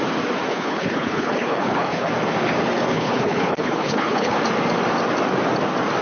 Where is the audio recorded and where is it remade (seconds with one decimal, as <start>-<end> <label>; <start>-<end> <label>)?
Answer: 0.0-0.5 recorded; 0.5-2.1 remade; 2.1-2.9 recorded; 2.9-4.4 remade; 4.4-6.0 recorded